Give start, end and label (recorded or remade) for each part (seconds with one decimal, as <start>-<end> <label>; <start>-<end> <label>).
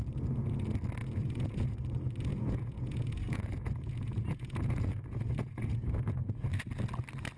0.0-1.0 recorded; 1.0-1.7 remade; 1.7-2.3 recorded; 2.3-6.5 remade; 6.5-7.4 recorded